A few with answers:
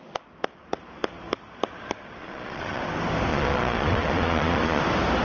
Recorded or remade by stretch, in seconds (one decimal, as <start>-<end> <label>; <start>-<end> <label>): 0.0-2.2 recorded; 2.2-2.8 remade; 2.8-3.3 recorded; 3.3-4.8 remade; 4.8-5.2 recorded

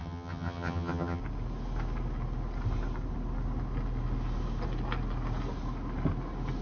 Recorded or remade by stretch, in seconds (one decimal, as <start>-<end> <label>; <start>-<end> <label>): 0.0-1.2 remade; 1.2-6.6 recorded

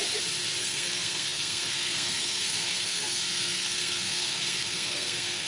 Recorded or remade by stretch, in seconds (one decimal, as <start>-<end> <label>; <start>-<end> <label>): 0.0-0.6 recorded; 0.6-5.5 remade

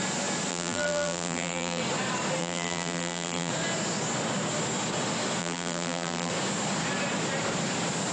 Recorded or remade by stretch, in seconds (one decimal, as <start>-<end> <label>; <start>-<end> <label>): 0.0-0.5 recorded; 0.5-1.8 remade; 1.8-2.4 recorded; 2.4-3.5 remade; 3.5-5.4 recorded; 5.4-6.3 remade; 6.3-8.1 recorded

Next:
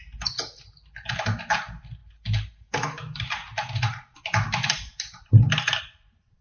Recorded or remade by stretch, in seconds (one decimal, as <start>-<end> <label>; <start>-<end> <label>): 0.0-6.4 recorded

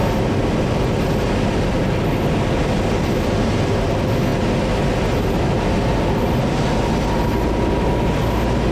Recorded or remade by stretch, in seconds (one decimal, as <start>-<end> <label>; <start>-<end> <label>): 0.0-8.7 recorded

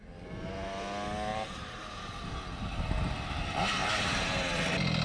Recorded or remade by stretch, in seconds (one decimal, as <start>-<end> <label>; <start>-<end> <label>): 0.0-1.3 recorded; 1.3-2.3 remade; 2.3-3.8 recorded; 3.8-4.5 remade; 4.5-5.0 recorded